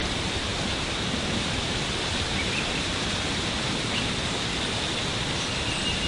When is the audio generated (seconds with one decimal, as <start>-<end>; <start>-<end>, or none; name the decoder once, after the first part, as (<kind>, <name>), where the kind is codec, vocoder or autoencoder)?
0.5-4.2 (vocoder, BigVGAN v2)